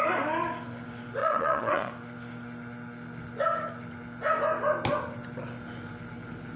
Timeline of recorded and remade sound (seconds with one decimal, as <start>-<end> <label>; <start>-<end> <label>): 0.0-1.2 recorded; 1.2-1.9 remade; 1.9-6.6 recorded